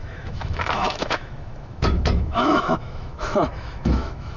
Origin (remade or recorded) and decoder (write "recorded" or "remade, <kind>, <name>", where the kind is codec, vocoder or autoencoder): remade, autoencoder, DAC-VAE